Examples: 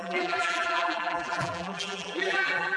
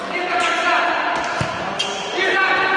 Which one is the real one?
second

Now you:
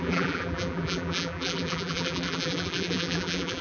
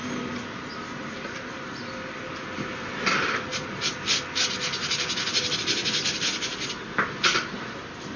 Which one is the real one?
second